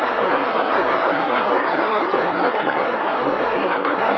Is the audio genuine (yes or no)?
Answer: no